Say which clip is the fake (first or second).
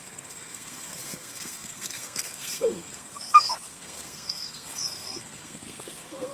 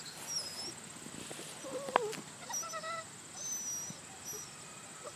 first